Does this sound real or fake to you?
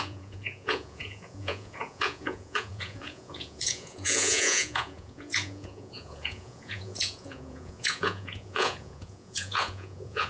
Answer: fake